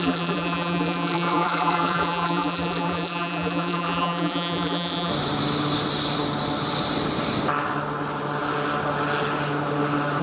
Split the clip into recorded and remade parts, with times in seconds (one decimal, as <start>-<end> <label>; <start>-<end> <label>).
0.0-5.1 remade; 5.1-10.2 recorded